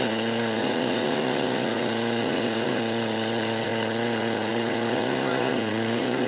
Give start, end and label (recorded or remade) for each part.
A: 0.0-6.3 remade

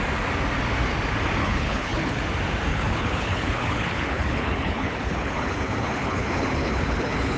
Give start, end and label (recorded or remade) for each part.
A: 0.0-1.4 recorded; 1.4-2.2 remade; 2.2-2.7 recorded; 2.7-7.4 remade

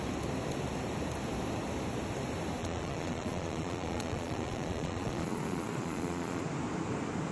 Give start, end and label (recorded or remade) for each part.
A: 0.0-2.6 recorded; 2.6-6.4 remade; 6.4-7.3 recorded

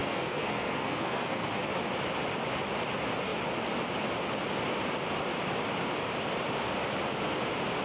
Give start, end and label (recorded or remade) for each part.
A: 0.0-1.5 remade; 1.5-7.8 recorded

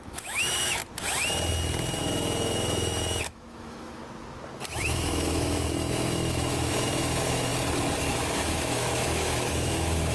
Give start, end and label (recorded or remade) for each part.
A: 0.0-0.8 remade; 0.8-2.0 recorded; 2.0-4.0 remade; 4.0-4.8 recorded; 4.8-7.5 remade; 7.5-8.1 recorded; 8.1-10.1 remade

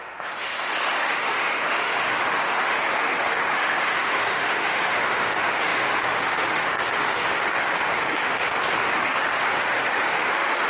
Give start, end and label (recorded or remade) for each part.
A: 0.0-10.7 remade